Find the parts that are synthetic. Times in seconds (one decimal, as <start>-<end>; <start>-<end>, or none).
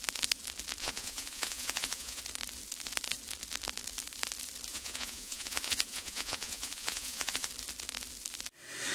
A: 0.8-2.2; 4.7-7.5